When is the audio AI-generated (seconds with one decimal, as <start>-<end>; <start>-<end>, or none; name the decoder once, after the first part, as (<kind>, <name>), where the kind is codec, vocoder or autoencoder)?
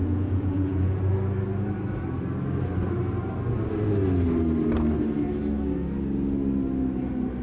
0.0-1.0 (vocoder, Vocos)